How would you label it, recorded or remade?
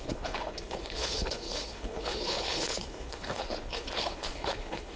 remade